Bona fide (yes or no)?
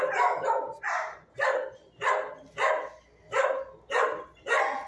yes